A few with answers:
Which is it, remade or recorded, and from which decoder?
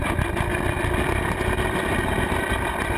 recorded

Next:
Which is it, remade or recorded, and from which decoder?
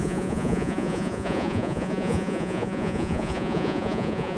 remade, vocoder, Vocos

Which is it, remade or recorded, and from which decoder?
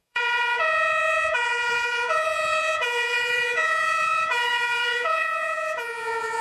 remade, vocoder, Vocos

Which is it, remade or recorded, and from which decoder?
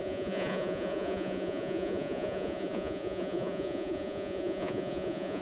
remade, vocoder, Vocos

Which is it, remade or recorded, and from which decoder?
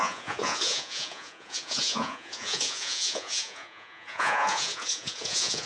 remade, vocoder, Vocos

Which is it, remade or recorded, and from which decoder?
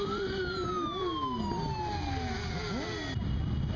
recorded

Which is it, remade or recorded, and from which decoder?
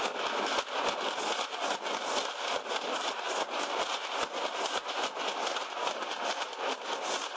recorded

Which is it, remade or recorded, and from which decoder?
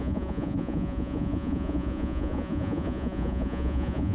remade, vocoder, Vocos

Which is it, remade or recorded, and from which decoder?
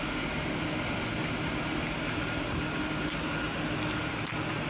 recorded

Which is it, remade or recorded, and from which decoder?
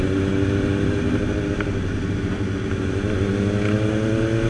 recorded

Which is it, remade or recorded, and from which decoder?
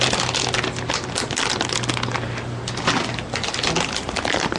recorded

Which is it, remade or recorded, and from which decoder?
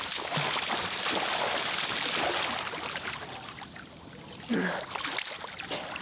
recorded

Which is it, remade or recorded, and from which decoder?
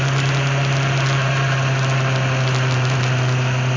recorded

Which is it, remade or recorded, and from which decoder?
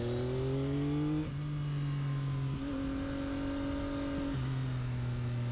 recorded